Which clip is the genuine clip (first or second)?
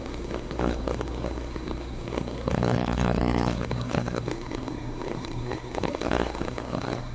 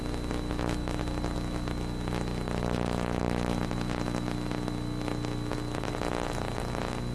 second